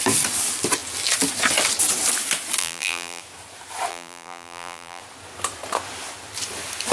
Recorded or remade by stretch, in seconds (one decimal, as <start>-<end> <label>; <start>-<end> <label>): 0.0-2.6 recorded; 2.6-3.2 remade; 3.2-3.9 recorded; 3.9-5.0 remade; 5.0-6.9 recorded